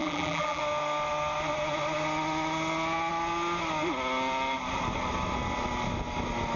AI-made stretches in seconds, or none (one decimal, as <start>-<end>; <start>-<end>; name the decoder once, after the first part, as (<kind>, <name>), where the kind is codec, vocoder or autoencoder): 0.0-0.6 (vocoder, BigVGAN v2)